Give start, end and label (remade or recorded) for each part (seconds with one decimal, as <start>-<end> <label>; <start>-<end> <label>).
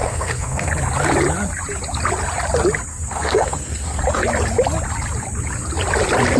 0.0-0.7 remade; 0.7-2.9 recorded; 2.9-4.0 remade; 4.0-6.4 recorded